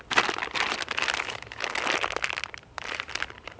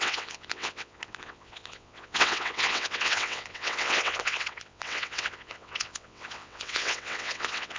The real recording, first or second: first